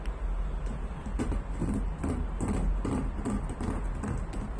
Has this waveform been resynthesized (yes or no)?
no